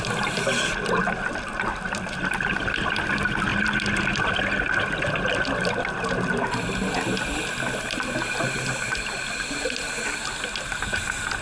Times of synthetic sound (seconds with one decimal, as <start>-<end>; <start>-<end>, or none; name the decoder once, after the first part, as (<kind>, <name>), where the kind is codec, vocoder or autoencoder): none